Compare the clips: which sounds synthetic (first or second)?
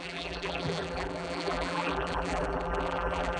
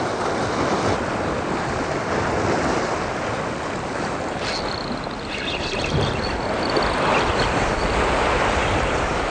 first